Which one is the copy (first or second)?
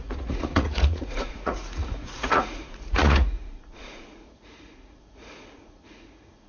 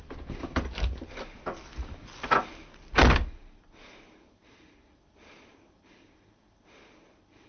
first